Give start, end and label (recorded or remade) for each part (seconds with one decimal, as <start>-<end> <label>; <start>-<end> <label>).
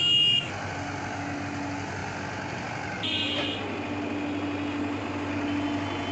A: 0.0-6.1 recorded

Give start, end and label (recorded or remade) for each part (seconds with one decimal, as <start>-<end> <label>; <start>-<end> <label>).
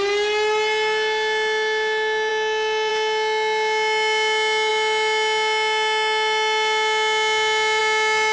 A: 0.0-8.3 recorded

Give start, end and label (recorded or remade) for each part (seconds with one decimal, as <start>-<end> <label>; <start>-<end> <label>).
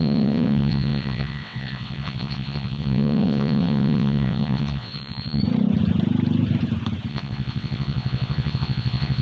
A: 0.0-5.4 remade; 5.4-7.1 recorded; 7.1-9.2 remade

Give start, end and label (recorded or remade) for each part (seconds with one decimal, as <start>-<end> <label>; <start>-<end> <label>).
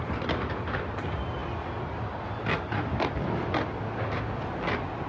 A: 0.0-5.1 recorded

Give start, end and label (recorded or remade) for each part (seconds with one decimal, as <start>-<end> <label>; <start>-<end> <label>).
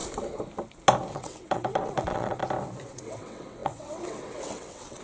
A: 0.0-1.1 recorded; 1.1-2.4 remade; 2.4-2.9 recorded; 2.9-5.0 remade